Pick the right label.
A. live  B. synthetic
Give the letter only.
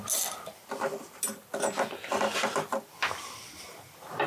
A